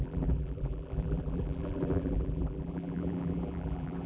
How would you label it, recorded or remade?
remade